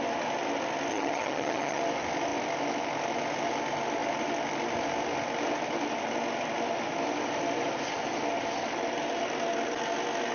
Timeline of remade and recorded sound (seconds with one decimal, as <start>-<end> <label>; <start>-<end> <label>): 0.0-0.9 recorded; 0.9-1.8 remade; 1.8-10.3 recorded